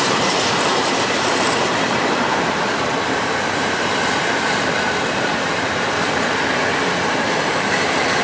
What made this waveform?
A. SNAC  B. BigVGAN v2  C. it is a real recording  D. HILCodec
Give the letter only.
B